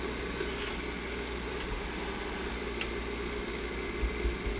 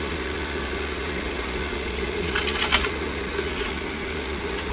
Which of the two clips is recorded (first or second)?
first